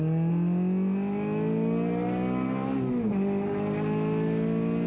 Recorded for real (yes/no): yes